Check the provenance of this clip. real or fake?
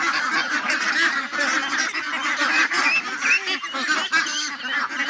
real